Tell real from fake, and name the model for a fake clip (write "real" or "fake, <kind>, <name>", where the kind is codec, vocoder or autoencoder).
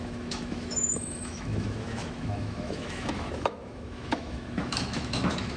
fake, autoencoder, DAC-VAE